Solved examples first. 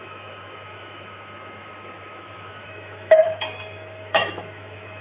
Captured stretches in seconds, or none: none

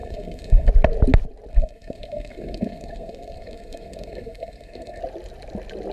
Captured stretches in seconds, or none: 0.7-1.5; 5.0-5.9

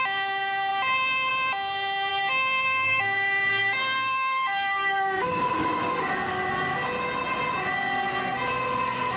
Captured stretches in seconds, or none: 0.0-2.1; 3.0-3.8; 6.5-9.2

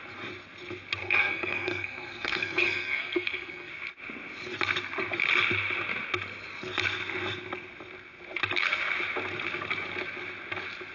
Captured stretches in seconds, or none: 0.0-1.0; 3.7-10.9

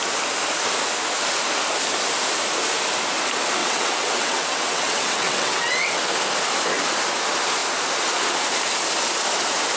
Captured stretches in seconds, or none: 0.0-3.6; 6.0-9.8